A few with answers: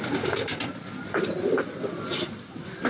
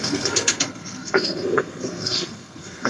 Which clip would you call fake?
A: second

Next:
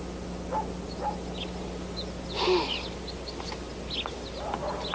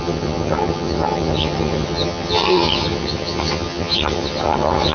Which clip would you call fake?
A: second